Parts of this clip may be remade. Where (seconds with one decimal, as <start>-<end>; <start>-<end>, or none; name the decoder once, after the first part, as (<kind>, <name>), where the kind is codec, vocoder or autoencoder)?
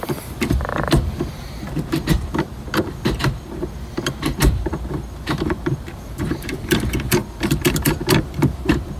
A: 0.0-9.0 (vocoder, BigVGAN v2)